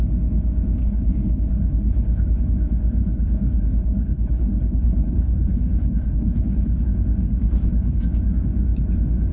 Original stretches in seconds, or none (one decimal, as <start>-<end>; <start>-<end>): 0.0-0.8; 2.4-3.0; 6.8-7.2; 8.0-9.3